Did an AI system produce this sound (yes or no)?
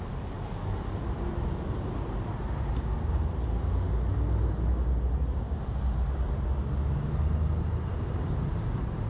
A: no